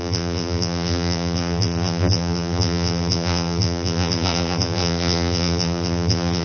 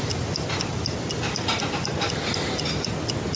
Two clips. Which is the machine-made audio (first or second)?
first